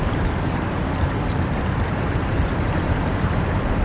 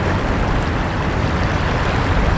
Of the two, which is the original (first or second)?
second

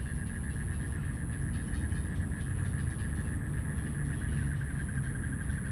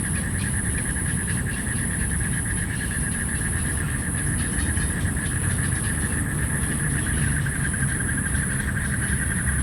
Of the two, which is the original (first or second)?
first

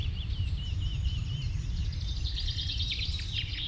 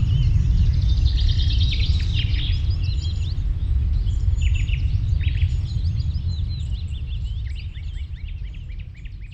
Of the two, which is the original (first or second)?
second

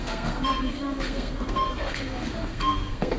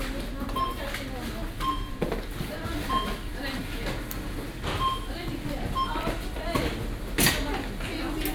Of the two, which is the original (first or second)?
second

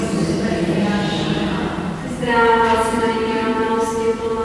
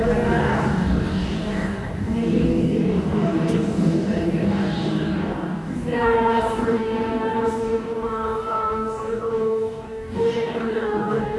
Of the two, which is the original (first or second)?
first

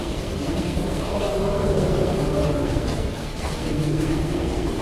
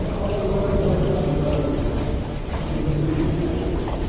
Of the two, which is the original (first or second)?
second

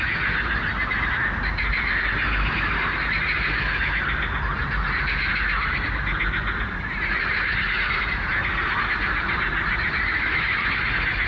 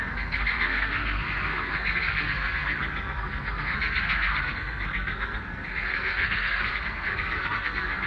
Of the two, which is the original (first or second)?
first